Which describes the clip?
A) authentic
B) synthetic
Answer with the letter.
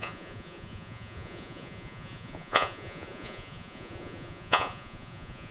B